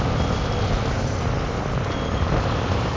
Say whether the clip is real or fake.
real